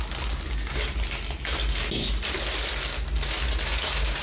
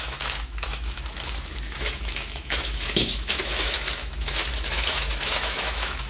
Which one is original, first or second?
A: first